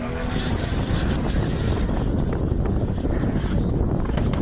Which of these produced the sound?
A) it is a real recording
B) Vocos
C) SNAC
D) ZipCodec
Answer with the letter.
A